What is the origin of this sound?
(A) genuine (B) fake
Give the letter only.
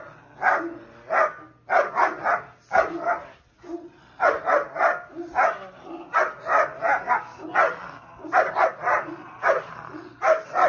A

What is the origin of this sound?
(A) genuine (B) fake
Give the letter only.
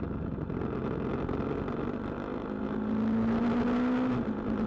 A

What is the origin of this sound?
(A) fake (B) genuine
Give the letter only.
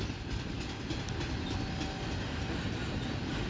B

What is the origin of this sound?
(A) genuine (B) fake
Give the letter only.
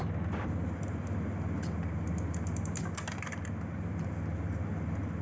A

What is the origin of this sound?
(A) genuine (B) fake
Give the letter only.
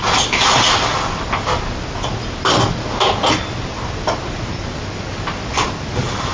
A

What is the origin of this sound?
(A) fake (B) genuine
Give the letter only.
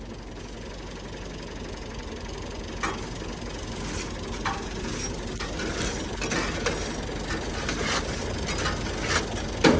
B